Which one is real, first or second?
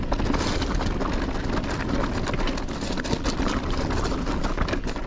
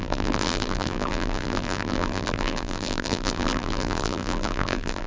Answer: first